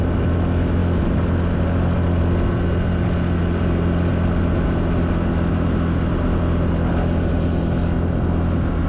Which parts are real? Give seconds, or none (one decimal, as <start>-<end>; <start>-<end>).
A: 0.0-8.9